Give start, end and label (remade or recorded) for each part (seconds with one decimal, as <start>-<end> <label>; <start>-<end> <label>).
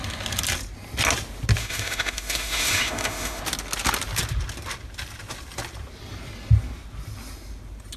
0.0-1.6 recorded; 1.6-3.4 remade; 3.4-8.0 recorded